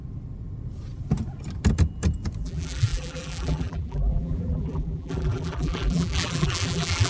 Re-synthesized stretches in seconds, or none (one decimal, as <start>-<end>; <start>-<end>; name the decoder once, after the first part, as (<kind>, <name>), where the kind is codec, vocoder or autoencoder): 2.4-7.1 (vocoder, BigVGAN v2)